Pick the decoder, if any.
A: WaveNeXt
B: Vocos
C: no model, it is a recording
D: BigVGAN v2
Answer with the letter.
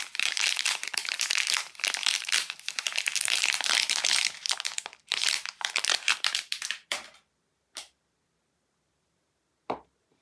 D